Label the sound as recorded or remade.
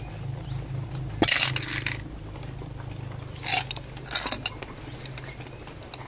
recorded